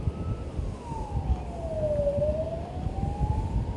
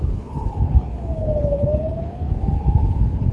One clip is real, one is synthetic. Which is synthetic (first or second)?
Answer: second